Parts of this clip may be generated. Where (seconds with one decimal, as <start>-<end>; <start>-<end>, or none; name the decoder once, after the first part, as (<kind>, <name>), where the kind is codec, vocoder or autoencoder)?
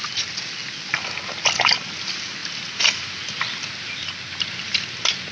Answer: none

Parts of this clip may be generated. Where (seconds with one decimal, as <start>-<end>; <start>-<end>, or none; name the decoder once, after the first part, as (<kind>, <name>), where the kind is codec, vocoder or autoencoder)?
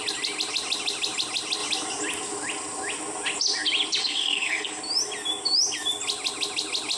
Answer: 4.0-4.8 (codec, SNAC)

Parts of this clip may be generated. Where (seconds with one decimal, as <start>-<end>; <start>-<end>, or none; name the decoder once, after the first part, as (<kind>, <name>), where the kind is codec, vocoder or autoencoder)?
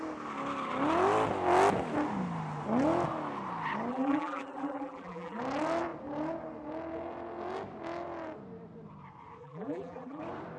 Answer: 3.9-5.4 (vocoder, BigVGAN v2); 9.4-10.2